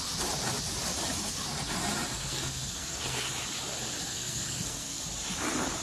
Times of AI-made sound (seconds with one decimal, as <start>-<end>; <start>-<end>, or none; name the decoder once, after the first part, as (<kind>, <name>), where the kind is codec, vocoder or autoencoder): 2.1-3.3 (codec, SNAC); 4.1-5.0